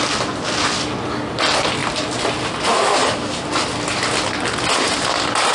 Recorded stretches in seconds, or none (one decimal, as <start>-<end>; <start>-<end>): 0.0-5.5